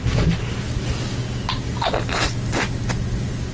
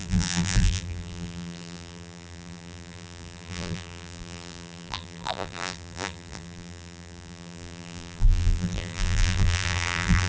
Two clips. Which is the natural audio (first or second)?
first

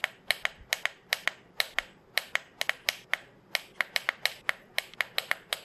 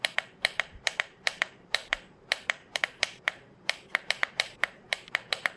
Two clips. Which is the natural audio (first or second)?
first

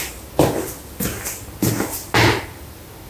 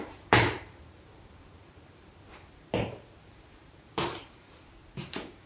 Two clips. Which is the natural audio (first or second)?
first